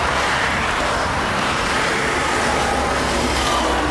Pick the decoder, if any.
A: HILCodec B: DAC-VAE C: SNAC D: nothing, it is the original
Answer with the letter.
D